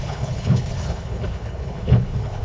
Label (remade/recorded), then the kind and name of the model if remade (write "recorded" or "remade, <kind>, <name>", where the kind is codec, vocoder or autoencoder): remade, codec, HILCodec